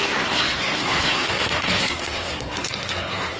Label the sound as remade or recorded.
remade